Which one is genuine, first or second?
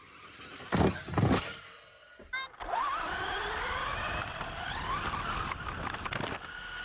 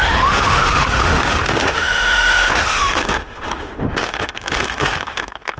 first